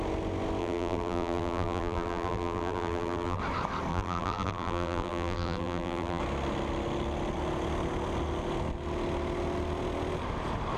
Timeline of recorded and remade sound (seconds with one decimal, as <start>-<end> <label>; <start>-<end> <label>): 0.0-0.6 recorded; 0.6-3.4 remade; 3.4-3.9 recorded; 3.9-6.2 remade; 6.2-10.8 recorded